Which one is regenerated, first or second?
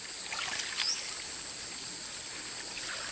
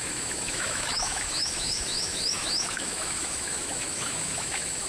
second